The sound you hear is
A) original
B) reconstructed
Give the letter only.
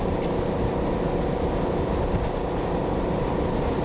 A